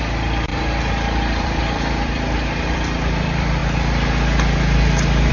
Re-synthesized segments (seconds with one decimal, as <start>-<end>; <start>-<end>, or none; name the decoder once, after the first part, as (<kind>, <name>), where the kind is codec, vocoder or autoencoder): 0.0-0.5 (vocoder, BigVGAN v2); 1.4-3.6